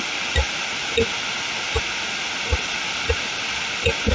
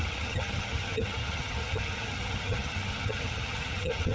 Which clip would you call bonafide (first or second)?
first